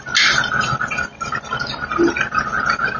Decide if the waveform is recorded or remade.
recorded